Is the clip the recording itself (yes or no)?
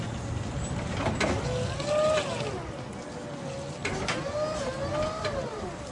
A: yes